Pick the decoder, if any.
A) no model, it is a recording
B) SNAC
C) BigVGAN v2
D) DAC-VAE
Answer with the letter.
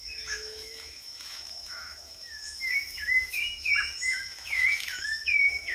D